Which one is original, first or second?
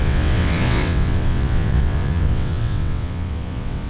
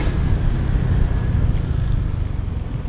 second